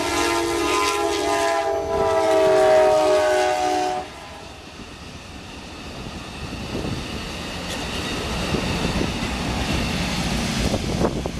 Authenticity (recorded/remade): recorded